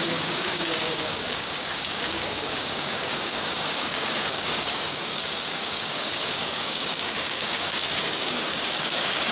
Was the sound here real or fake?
fake